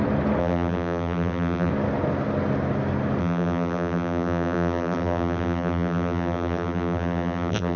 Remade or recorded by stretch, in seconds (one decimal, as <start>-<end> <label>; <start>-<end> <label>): 0.0-0.4 recorded; 0.4-1.7 remade; 1.7-3.2 recorded; 3.2-7.8 remade